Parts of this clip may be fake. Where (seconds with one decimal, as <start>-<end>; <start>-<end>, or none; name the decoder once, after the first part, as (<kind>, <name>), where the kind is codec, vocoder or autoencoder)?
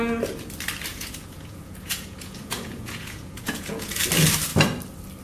0.9-4.0 (vocoder, Vocos)